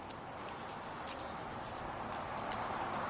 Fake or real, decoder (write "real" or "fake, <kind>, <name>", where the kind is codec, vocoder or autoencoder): real